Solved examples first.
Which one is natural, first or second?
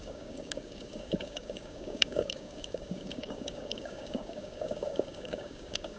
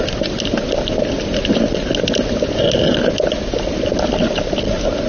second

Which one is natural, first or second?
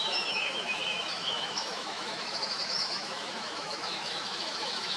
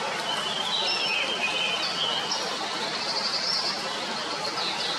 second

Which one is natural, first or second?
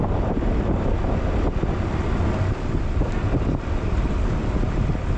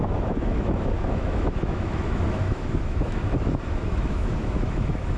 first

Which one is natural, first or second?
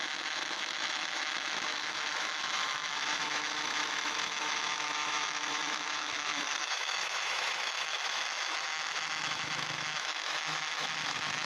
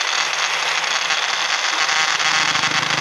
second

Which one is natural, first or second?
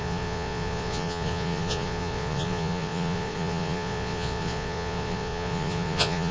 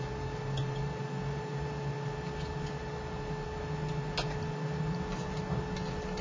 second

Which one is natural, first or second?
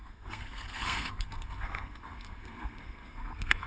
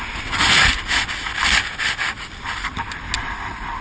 second